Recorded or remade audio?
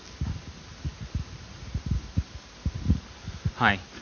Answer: recorded